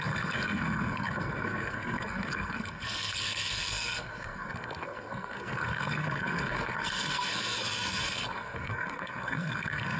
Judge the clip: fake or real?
fake